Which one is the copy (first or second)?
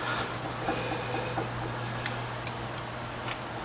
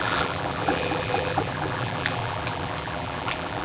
second